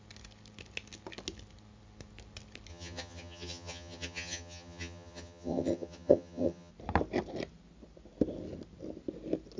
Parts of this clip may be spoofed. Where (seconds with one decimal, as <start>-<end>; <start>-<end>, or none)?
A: 2.7-6.7